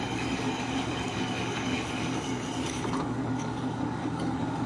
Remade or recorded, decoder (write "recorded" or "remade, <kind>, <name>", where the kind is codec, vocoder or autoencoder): remade, codec, DAC